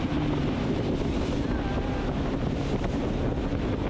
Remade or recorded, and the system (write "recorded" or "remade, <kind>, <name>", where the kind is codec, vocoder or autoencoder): recorded